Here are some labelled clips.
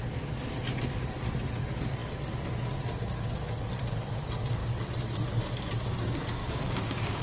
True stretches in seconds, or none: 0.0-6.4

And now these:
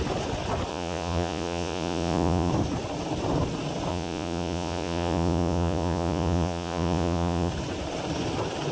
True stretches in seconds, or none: 0.0-0.7; 2.5-3.9; 7.5-8.7

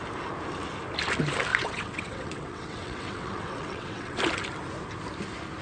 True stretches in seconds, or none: 0.0-1.5; 4.2-5.6

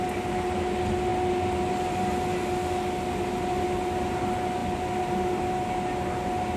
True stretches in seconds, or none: 0.0-1.1; 3.6-4.6; 6.1-6.6